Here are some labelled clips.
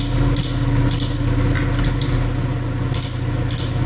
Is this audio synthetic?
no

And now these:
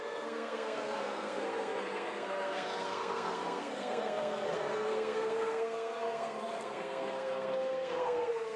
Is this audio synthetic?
yes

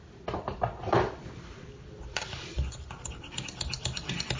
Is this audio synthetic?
yes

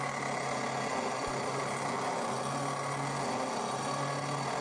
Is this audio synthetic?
no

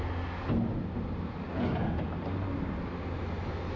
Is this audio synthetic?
no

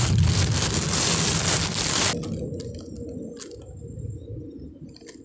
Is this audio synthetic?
no